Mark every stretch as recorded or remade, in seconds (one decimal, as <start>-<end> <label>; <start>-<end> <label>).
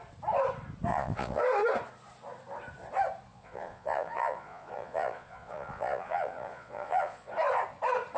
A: 0.0-0.9 recorded; 0.9-1.4 remade; 1.4-3.3 recorded; 3.3-7.3 remade; 7.3-8.2 recorded